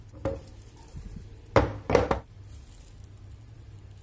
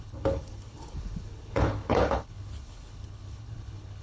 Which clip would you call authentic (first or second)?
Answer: first